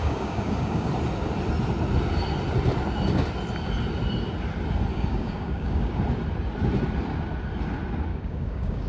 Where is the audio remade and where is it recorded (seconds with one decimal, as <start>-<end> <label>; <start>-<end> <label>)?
0.0-0.9 remade; 0.9-4.9 recorded; 4.9-5.9 remade; 5.9-8.1 recorded; 8.1-8.9 remade